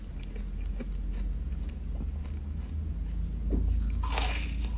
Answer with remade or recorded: recorded